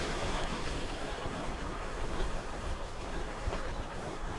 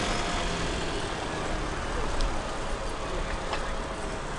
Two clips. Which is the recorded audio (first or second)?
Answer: second